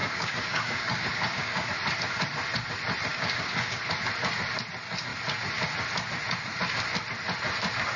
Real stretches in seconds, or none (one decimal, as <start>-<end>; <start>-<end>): 1.7-3.1; 3.8-8.0